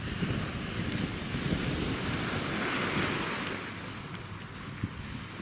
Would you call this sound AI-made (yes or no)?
no